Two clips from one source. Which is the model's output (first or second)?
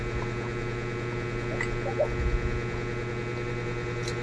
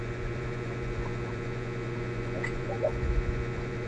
second